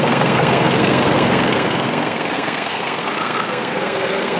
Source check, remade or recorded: remade